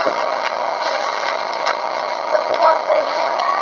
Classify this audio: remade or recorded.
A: remade